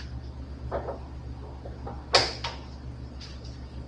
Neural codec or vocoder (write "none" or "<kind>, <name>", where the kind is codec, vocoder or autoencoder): none